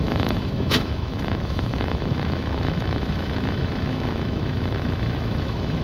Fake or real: fake